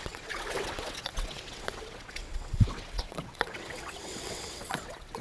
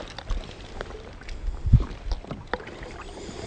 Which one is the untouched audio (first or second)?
second